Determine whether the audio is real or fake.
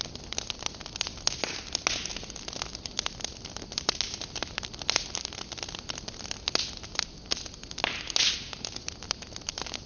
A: real